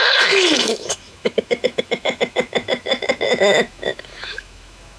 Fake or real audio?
fake